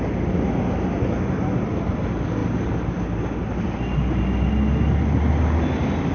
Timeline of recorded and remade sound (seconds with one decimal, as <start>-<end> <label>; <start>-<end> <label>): 0.0-6.1 recorded